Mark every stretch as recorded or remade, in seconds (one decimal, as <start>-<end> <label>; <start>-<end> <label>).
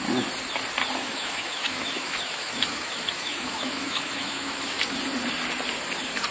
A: 0.0-1.0 recorded; 1.0-4.8 remade; 4.8-6.3 recorded